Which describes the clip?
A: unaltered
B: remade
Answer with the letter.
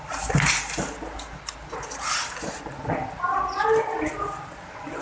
A